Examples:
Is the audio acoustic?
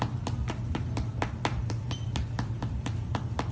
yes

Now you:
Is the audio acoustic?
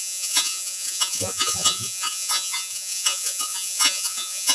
no